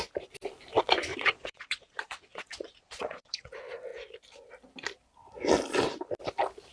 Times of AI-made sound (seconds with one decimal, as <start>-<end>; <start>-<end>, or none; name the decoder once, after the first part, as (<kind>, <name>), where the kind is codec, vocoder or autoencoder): 1.1-3.5 (vocoder, Vocos)